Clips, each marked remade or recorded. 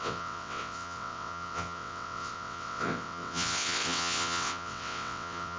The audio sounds remade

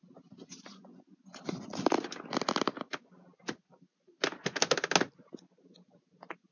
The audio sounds recorded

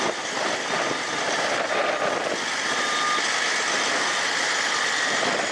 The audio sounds recorded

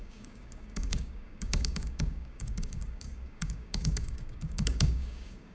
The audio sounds remade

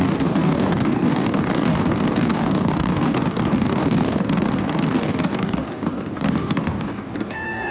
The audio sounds remade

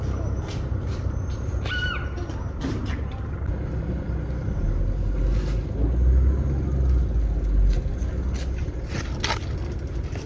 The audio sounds recorded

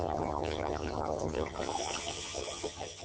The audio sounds remade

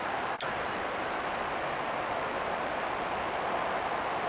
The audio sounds recorded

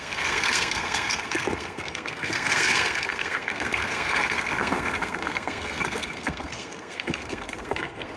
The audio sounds remade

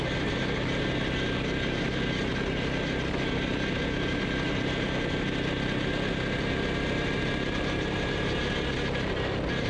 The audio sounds recorded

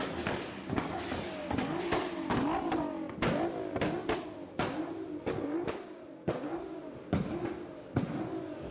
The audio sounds recorded